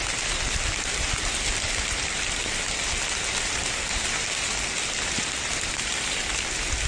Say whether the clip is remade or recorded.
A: recorded